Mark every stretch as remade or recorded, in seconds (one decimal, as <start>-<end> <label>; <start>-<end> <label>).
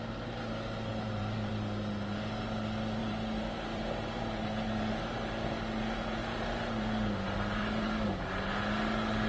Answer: 0.0-0.9 recorded; 0.9-1.5 remade; 1.5-3.0 recorded; 3.0-4.9 remade; 4.9-6.2 recorded; 6.2-7.9 remade; 7.9-9.3 recorded